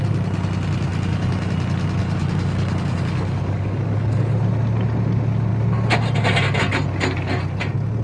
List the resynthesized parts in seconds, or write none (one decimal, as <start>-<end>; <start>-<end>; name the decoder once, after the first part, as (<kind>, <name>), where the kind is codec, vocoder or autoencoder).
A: 0.9-1.5 (codec, DAC); 2.0-4.3